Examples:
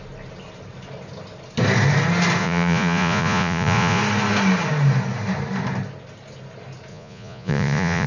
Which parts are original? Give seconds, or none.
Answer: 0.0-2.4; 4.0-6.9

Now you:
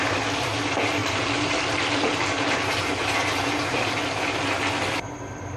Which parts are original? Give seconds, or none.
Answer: 0.0-5.6

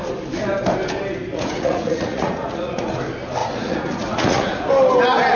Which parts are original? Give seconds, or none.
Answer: 0.0-1.3; 3.0-3.4; 4.7-5.3

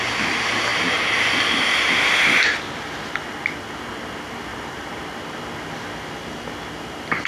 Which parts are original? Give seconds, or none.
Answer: 0.0-4.5; 5.3-7.3

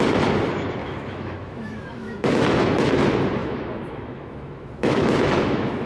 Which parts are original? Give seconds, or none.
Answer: 0.0-0.8; 2.7-3.4

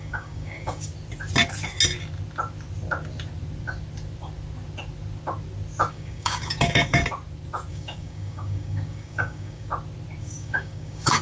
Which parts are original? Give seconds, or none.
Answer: 0.9-5.9; 7.0-7.7; 9.7-10.2